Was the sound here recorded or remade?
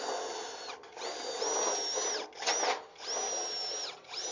recorded